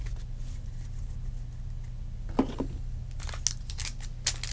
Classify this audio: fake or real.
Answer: real